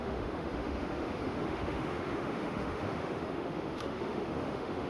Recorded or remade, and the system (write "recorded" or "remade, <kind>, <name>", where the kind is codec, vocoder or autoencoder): remade, autoencoder, DAC-VAE